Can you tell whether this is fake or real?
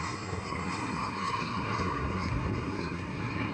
fake